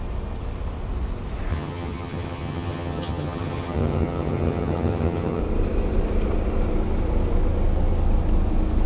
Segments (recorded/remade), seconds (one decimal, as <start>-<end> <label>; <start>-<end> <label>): 0.0-1.5 recorded; 1.5-5.4 remade; 5.4-8.9 recorded